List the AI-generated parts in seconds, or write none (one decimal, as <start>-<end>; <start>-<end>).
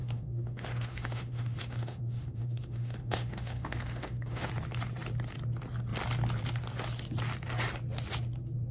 0.0-4.5